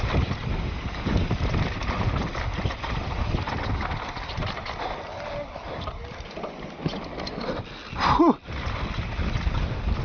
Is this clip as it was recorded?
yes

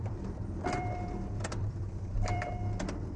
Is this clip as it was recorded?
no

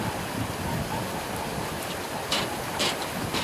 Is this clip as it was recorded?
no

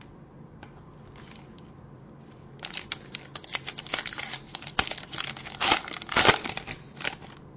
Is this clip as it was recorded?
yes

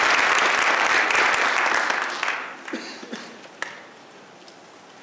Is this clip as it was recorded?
yes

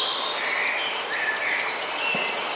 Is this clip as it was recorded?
no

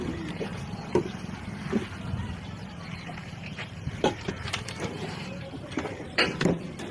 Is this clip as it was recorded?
no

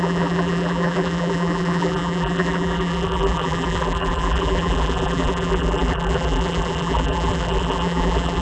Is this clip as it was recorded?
no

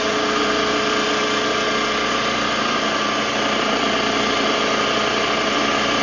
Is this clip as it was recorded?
yes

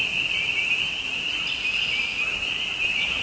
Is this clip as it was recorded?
yes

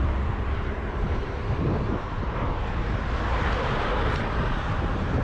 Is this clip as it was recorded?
no